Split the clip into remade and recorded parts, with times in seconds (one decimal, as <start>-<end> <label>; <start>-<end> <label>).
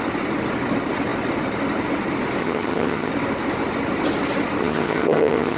0.0-2.4 recorded; 2.4-3.1 remade; 3.1-4.6 recorded; 4.6-5.6 remade